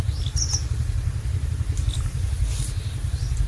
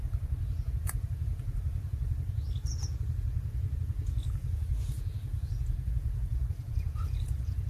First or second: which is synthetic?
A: second